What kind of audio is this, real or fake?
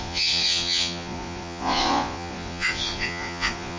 fake